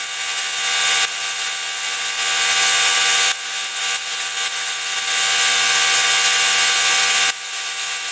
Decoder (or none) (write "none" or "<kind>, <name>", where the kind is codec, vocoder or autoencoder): none